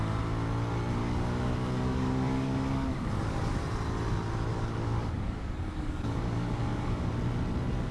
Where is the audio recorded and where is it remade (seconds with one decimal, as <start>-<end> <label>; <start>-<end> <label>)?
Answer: 0.0-1.0 recorded; 1.0-3.1 remade; 3.1-4.5 recorded; 4.5-7.1 remade; 7.1-7.9 recorded